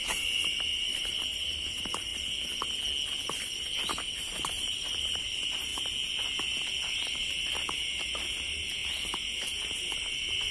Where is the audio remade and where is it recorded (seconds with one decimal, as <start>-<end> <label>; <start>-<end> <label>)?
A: 0.0-2.1 remade; 2.1-4.2 recorded; 4.2-5.7 remade; 5.7-6.9 recorded; 6.9-8.8 remade; 8.8-9.5 recorded; 9.5-10.5 remade

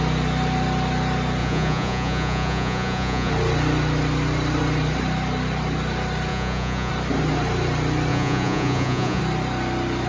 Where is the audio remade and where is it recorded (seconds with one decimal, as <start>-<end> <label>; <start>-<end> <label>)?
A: 0.0-1.4 recorded; 1.4-3.3 remade; 3.3-6.3 recorded; 6.3-6.9 remade; 6.9-8.1 recorded; 8.1-9.2 remade; 9.2-10.1 recorded

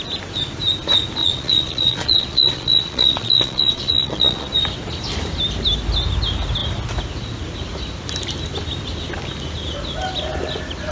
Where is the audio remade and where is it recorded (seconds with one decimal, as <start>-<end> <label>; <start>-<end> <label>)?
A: 0.0-1.2 recorded; 1.2-4.5 remade; 4.5-10.9 recorded